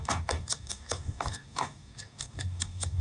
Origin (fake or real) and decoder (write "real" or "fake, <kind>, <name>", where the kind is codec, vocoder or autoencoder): fake, codec, DAC